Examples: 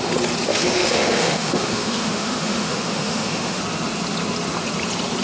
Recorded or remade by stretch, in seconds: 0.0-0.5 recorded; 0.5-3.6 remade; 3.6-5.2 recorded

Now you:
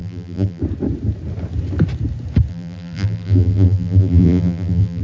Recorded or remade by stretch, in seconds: 0.0-0.6 remade; 0.6-2.5 recorded; 2.5-5.0 remade

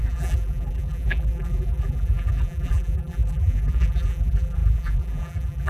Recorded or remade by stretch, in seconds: 0.0-5.7 remade

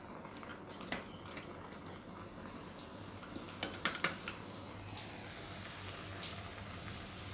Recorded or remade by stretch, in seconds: 0.0-7.3 recorded

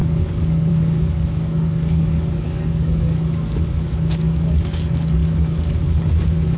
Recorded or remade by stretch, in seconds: 0.0-6.6 remade